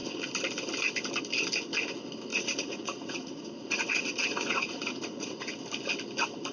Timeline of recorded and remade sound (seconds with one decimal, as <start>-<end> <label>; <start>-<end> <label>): 0.0-2.3 recorded; 2.3-5.5 remade; 5.5-6.5 recorded